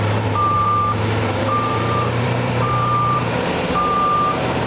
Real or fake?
fake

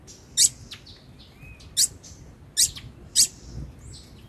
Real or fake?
real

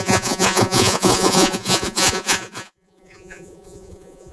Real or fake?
fake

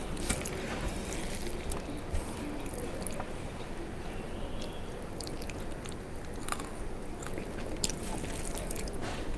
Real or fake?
real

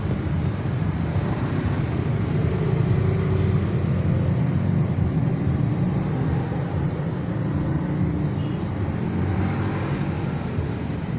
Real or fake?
real